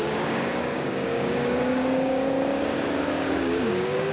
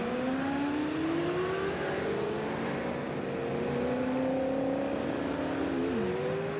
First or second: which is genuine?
second